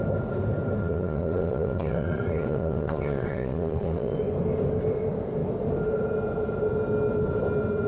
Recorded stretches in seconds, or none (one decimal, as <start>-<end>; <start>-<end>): 0.0-0.8; 4.2-7.9